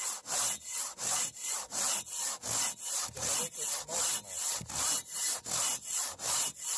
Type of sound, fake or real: real